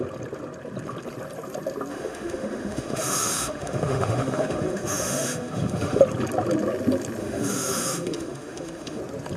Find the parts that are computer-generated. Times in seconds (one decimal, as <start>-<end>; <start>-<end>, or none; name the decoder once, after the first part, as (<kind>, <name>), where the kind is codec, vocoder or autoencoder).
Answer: 1.9-6.0 (autoencoder, DAC-VAE); 7.2-9.0